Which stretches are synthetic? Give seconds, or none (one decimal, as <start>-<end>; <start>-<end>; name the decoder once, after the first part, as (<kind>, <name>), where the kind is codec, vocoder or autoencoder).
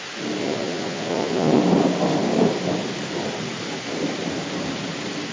0.4-1.6 (vocoder, Vocos)